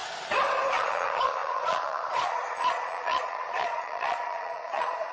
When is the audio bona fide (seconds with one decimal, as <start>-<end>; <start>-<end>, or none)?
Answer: 0.0-0.7